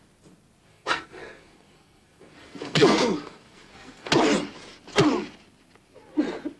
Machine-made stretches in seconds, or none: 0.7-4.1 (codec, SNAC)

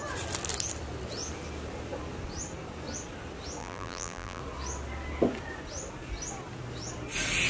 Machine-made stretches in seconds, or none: 3.6-4.4 (vocoder, BigVGAN v2)

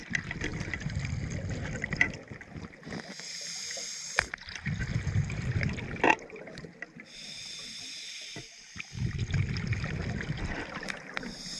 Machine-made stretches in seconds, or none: none